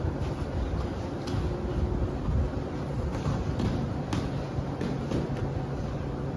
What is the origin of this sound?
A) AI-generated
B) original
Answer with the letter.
B